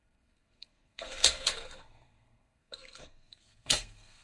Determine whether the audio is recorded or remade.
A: remade